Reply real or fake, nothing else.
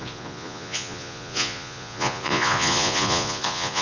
fake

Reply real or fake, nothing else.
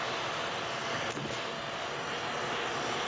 real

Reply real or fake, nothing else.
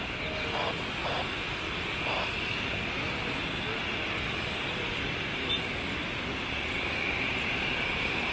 real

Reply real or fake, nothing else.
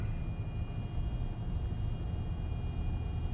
real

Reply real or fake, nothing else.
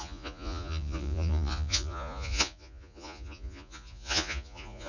fake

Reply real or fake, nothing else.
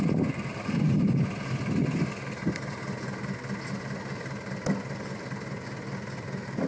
real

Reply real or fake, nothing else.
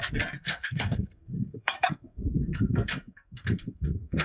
fake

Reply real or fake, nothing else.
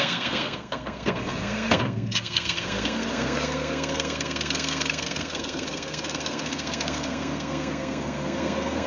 fake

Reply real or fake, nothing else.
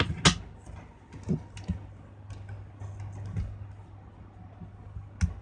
real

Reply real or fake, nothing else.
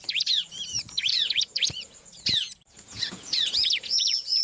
fake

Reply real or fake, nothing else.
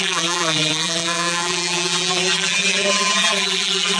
fake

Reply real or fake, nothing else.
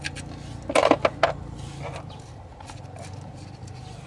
real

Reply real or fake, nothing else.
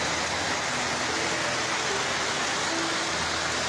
real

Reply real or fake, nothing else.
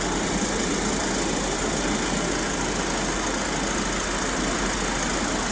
real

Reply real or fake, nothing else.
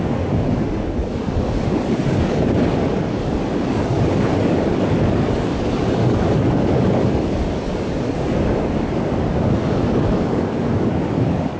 fake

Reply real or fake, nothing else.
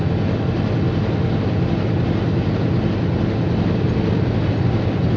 real